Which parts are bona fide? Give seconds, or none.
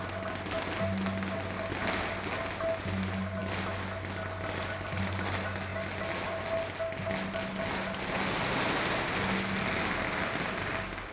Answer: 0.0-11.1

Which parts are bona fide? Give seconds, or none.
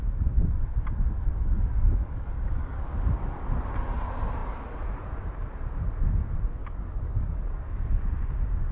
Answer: 0.0-1.3; 2.8-6.6; 7.9-8.7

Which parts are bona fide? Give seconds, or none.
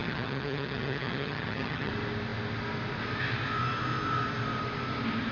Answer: 1.9-5.3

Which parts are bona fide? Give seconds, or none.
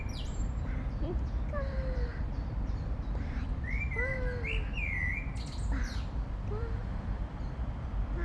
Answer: 4.1-5.4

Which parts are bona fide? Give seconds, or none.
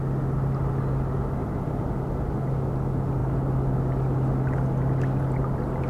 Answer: 0.0-1.4; 2.2-5.9